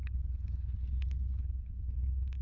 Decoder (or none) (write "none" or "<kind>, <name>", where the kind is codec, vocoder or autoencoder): codec, HILCodec